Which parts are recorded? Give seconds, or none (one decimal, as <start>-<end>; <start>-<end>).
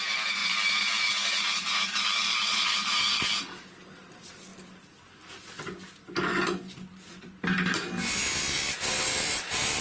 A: 0.0-9.8